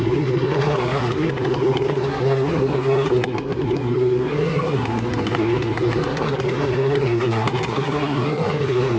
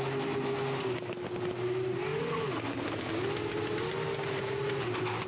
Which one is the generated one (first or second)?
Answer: first